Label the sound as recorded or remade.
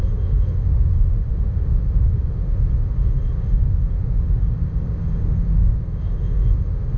remade